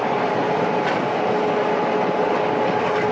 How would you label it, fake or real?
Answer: real